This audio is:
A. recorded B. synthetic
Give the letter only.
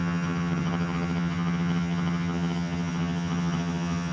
B